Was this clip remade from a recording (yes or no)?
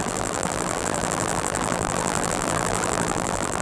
yes